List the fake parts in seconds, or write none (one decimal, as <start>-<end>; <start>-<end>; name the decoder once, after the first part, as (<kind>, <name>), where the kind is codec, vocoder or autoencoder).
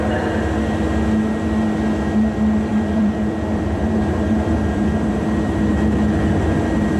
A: 2.7-5.7 (vocoder, BigVGAN v2)